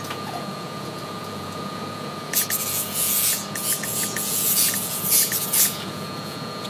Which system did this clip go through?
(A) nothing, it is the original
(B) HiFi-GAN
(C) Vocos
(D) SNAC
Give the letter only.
C